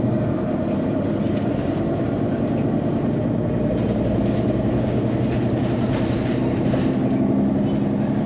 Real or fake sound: real